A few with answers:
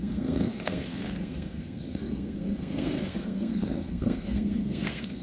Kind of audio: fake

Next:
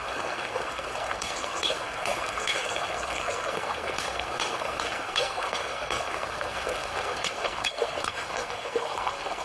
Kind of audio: fake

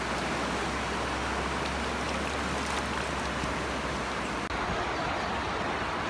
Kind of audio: real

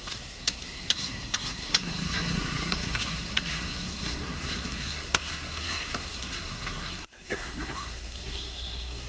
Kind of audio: fake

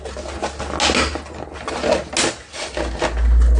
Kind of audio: real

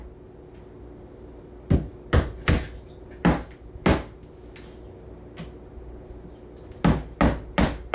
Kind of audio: real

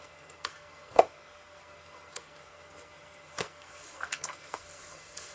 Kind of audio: fake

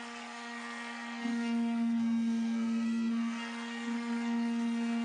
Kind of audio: fake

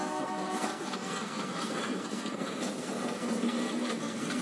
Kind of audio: fake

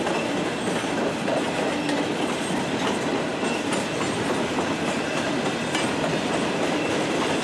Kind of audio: real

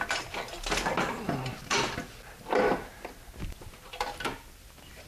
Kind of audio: real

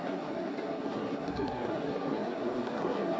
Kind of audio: fake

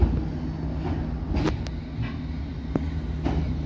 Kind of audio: real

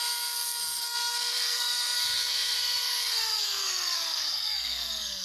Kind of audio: fake